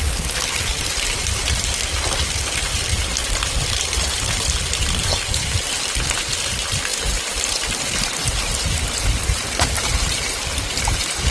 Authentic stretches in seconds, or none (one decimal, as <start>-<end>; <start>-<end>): none